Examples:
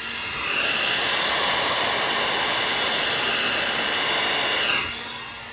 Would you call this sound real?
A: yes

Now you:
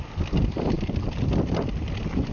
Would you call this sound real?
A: yes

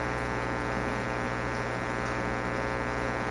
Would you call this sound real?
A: yes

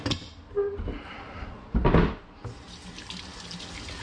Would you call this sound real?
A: yes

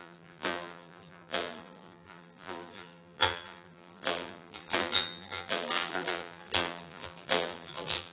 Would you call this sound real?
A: no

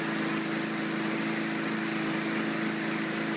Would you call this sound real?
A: yes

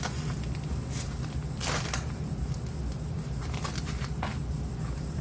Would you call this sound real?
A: yes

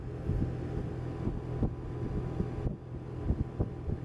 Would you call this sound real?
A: yes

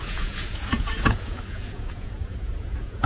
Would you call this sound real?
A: no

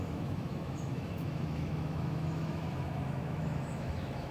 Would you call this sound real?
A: no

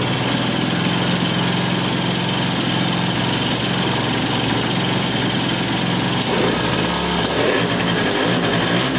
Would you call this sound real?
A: yes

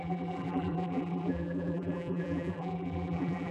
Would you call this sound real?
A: no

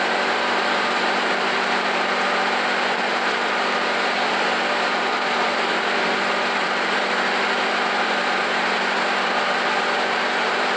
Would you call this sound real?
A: no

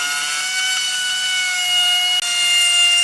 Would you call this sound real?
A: yes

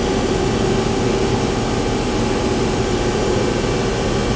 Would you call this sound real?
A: yes